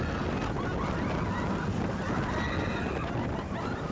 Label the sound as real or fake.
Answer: real